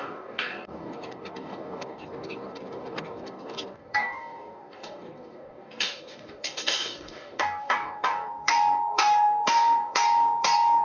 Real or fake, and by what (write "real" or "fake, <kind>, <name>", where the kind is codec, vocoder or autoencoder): fake, codec, DAC